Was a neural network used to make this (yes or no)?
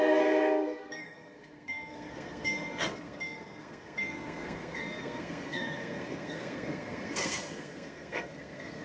yes